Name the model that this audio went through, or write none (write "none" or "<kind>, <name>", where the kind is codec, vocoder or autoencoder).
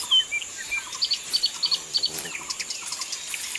none